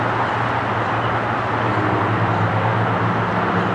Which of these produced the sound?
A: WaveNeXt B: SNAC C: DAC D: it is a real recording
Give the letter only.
D